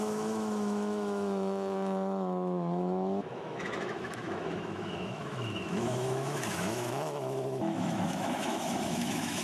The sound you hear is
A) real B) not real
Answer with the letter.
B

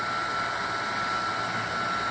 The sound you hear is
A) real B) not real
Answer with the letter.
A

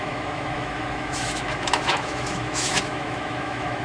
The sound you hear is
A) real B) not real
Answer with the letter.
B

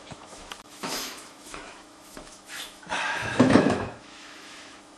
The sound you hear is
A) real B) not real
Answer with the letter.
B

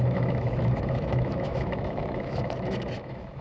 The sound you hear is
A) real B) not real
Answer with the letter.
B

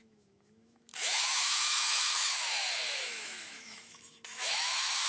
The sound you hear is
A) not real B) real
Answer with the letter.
A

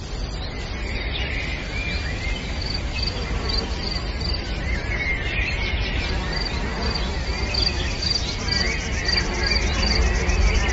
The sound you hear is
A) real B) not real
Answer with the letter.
A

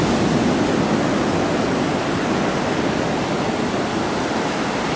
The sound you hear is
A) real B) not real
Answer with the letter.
A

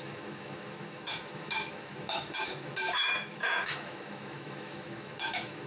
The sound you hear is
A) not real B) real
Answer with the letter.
A